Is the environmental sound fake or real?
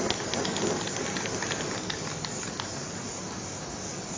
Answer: real